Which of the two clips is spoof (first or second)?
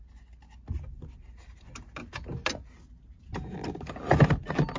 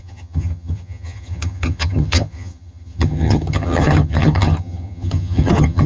second